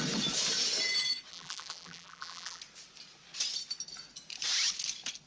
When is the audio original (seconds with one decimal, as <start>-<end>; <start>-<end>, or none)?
0.0-1.3; 2.6-5.3